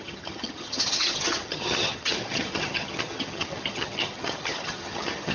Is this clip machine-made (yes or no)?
yes